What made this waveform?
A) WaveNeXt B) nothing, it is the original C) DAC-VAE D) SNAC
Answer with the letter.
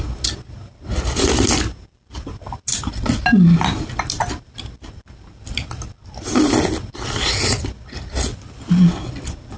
B